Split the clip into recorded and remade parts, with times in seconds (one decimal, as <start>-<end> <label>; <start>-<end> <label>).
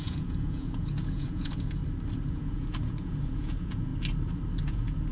0.0-1.8 remade; 1.8-2.3 recorded; 2.3-3.9 remade; 3.9-4.6 recorded; 4.6-5.1 remade